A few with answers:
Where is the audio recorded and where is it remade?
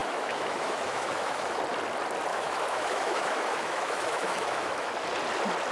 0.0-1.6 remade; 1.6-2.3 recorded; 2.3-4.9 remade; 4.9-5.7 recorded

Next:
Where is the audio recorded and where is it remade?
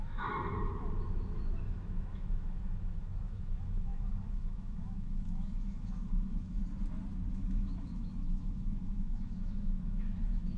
0.0-6.6 remade; 6.6-7.3 recorded; 7.3-10.6 remade